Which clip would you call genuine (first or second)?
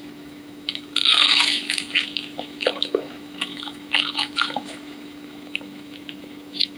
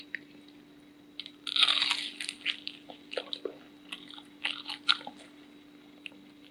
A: second